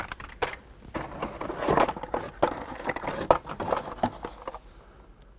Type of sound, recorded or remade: recorded